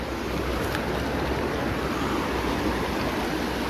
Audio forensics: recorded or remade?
recorded